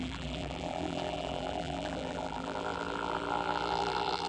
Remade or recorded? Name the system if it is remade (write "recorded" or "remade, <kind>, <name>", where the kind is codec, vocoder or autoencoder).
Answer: remade, vocoder, BigVGAN v2